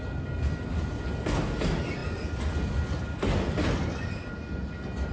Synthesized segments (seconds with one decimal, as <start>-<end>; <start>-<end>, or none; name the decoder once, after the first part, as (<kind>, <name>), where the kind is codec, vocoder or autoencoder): none